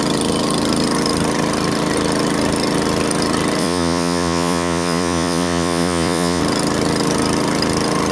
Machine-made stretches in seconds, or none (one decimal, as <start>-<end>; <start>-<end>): 3.6-6.4